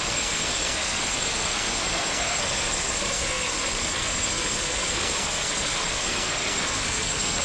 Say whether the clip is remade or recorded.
remade